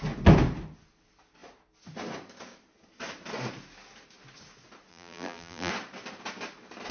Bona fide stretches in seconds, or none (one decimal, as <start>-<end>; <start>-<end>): 0.0-4.9; 5.7-6.9